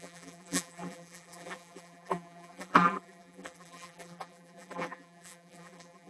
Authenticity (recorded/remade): remade